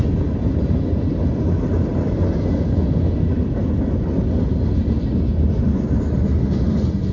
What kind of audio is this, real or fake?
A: real